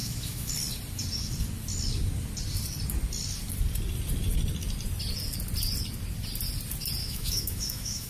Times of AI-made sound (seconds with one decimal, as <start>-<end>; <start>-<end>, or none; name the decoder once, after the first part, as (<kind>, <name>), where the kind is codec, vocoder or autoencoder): 0.0-0.5 (autoencoder, DAC-VAE); 7.0-8.1